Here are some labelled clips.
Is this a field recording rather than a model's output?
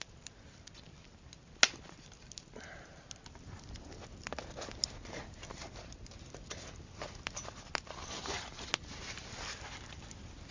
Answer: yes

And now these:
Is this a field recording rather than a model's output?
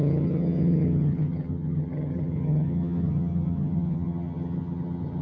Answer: no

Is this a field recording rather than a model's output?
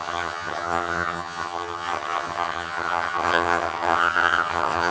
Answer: no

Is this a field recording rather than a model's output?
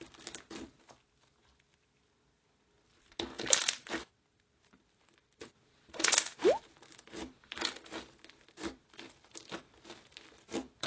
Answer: yes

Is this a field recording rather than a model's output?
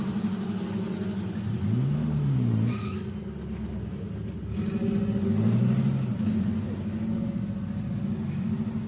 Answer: yes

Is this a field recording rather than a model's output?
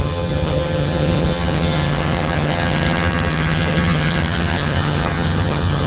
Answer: no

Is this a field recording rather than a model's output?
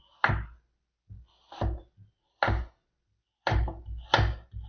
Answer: yes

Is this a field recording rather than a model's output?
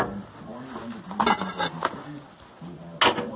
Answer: yes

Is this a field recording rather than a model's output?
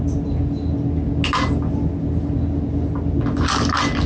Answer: yes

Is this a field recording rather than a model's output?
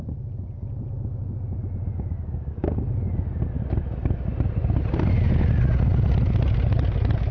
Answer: yes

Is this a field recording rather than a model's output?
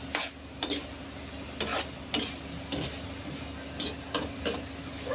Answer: yes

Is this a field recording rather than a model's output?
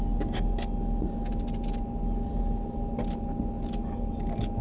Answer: yes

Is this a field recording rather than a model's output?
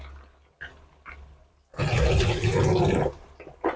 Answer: yes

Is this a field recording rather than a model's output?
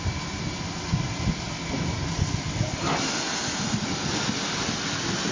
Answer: yes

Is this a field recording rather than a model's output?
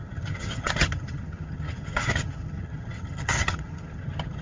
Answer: no